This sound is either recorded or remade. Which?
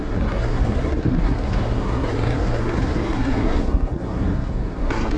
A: remade